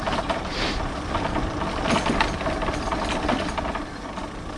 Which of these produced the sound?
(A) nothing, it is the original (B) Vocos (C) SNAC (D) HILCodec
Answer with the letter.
A